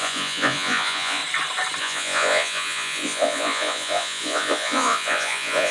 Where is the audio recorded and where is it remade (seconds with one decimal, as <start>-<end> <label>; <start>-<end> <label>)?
0.0-1.2 remade; 1.2-1.8 recorded; 1.8-5.7 remade